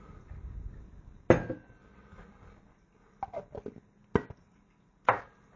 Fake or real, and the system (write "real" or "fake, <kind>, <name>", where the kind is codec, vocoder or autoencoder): real